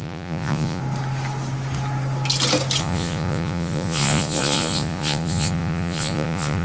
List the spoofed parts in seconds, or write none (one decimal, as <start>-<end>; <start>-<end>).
0.0-0.8; 2.8-6.6